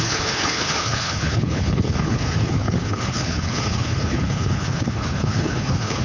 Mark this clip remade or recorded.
remade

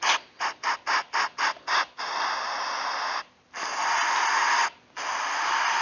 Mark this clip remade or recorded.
recorded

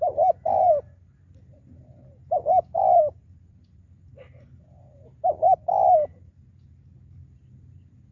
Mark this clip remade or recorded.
recorded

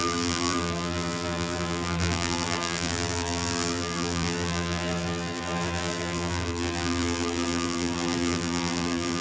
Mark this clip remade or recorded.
remade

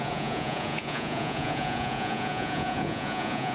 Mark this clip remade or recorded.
remade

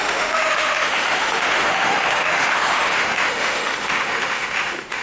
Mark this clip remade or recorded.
remade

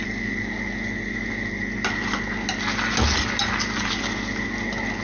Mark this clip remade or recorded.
recorded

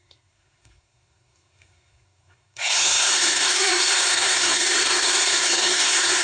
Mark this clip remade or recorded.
remade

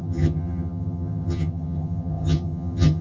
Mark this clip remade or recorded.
remade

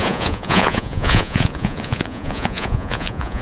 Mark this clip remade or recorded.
remade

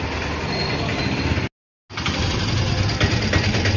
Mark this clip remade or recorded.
recorded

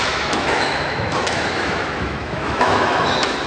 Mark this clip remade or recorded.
remade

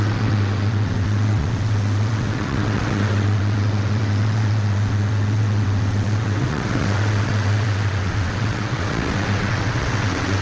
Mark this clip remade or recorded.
remade